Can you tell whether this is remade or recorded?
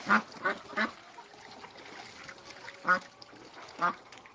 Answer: recorded